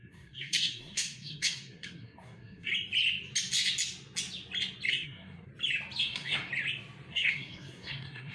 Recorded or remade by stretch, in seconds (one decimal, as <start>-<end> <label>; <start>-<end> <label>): 0.0-2.7 remade; 2.7-4.9 recorded; 4.9-5.5 remade; 5.5-6.0 recorded; 6.0-6.5 remade; 6.5-7.1 recorded; 7.1-8.3 remade

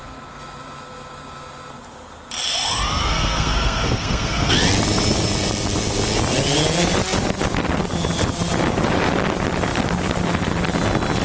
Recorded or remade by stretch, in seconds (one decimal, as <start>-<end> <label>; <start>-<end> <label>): 0.0-3.0 recorded; 3.0-4.5 remade; 4.5-11.2 recorded